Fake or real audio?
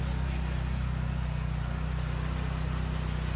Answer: real